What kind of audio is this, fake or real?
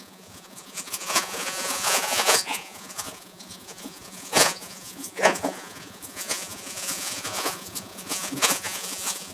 fake